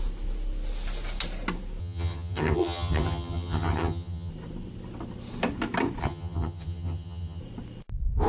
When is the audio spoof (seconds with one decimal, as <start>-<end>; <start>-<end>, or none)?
1.8-4.3; 6.0-7.4